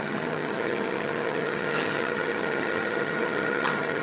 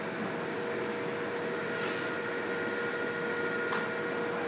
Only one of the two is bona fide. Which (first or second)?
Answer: second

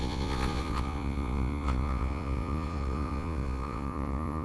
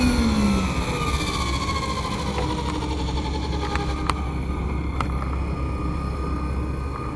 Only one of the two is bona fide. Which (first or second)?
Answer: second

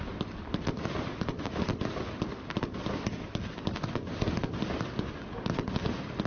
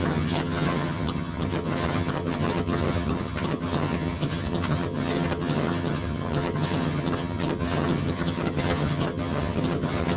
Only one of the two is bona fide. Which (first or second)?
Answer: first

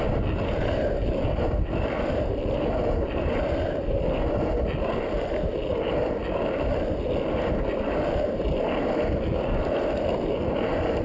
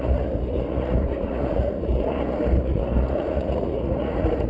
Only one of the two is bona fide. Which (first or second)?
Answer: first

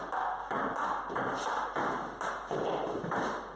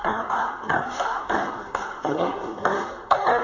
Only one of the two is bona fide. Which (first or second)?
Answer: first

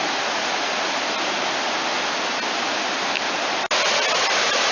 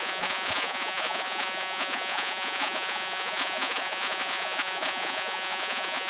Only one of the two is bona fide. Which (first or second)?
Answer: first